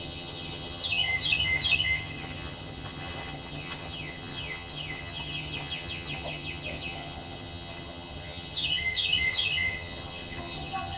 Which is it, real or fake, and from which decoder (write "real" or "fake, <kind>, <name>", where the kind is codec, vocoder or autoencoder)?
fake, vocoder, HiFi-GAN